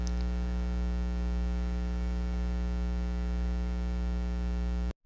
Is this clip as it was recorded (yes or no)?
yes